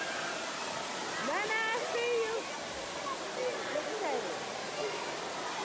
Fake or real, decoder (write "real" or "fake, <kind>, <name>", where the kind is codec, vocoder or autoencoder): real